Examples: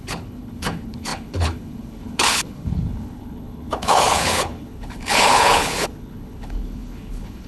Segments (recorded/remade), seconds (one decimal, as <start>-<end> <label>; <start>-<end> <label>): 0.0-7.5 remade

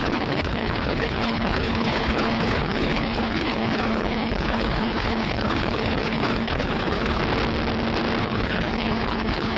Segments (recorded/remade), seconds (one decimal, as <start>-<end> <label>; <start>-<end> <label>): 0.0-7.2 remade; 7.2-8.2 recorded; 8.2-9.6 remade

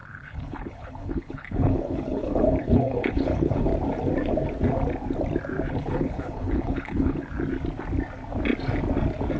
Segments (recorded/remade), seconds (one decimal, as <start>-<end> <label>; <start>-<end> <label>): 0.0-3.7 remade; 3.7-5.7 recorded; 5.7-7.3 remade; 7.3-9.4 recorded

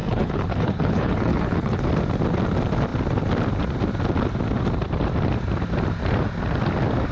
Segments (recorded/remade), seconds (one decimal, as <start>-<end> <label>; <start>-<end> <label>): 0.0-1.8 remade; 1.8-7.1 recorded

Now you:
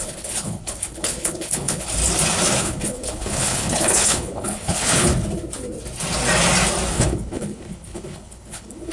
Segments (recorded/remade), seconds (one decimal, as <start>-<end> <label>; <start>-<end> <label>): 0.0-2.0 remade; 2.0-2.6 recorded; 2.6-5.1 remade; 5.1-6.9 recorded; 6.9-8.9 remade

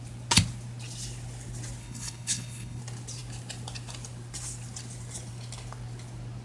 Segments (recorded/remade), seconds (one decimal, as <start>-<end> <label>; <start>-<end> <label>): 0.0-1.8 recorded; 1.8-2.8 remade; 2.8-6.4 recorded